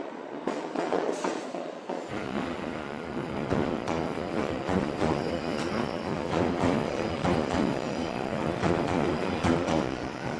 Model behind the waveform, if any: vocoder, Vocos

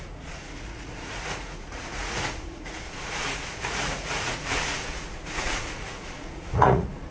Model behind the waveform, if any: vocoder, Vocos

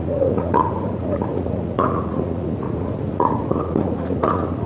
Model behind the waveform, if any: vocoder, Vocos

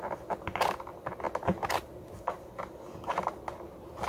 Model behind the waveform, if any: none